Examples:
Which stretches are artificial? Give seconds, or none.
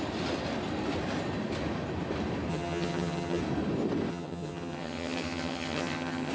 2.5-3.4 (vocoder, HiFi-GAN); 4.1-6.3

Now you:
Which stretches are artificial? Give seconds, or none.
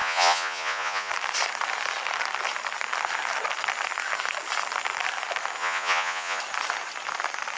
0.0-1.1 (vocoder, Vocos); 5.6-6.4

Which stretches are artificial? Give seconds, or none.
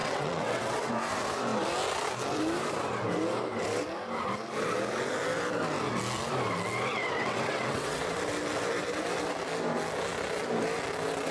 0.0-0.9 (vocoder, WaveNeXt); 6.9-8.2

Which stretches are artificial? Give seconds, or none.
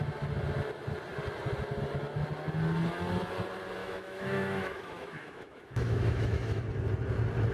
3.8-6.6 (autoencoder, DAC-VAE)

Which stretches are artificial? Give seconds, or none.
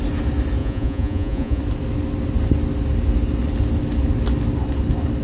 0.6-1.6 (vocoder, Vocos)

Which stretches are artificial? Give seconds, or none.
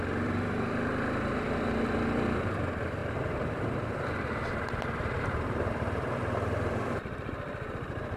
0.0-8.2 (vocoder, BigVGAN v2)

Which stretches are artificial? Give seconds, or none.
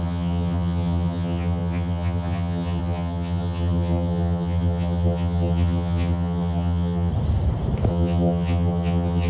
0.0-7.1 (vocoder, HiFi-GAN); 7.9-9.3